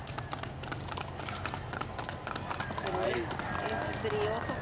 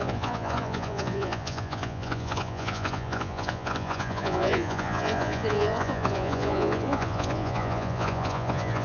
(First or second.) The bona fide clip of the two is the first